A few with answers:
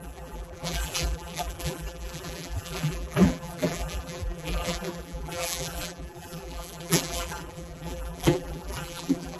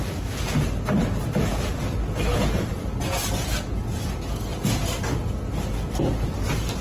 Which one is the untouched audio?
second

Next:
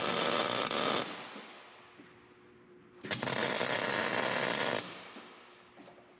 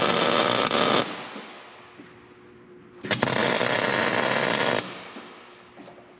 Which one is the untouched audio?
second